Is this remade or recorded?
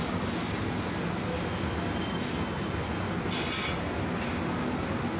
recorded